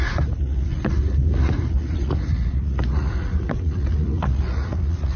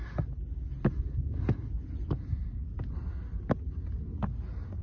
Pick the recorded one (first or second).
second